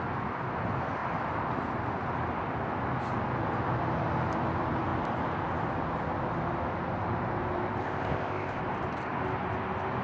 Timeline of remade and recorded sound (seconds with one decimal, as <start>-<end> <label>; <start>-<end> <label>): 0.0-7.8 recorded; 7.8-8.6 remade; 8.6-10.0 recorded